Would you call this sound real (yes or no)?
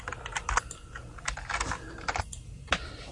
yes